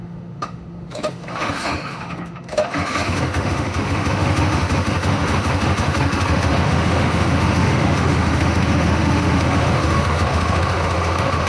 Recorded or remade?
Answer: remade